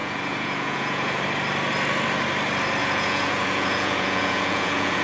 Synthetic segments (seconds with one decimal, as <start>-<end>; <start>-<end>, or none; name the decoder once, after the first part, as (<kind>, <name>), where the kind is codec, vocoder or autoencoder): 0.0-1.2 (vocoder, Vocos); 2.8-5.0